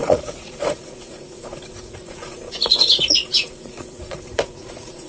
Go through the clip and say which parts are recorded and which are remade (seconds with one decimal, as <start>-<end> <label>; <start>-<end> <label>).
0.0-5.1 remade